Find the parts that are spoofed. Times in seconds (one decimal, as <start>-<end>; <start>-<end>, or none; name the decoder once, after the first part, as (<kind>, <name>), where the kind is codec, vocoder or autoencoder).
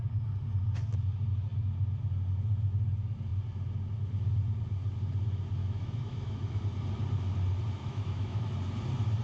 5.6-6.6 (autoencoder, DAC-VAE); 7.8-8.5